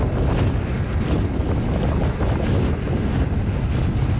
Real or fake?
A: real